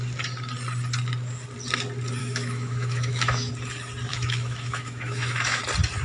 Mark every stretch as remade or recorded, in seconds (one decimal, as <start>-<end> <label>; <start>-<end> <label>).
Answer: 0.0-2.2 recorded; 2.2-3.5 remade; 3.5-4.1 recorded; 4.1-5.6 remade; 5.6-6.0 recorded